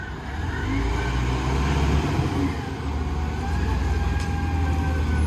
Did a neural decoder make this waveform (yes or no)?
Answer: no